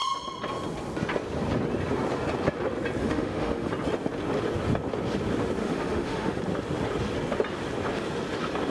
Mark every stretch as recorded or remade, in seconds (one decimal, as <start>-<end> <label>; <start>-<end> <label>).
0.0-3.0 recorded; 3.0-3.7 remade; 3.7-5.6 recorded; 5.6-6.4 remade; 6.4-8.7 recorded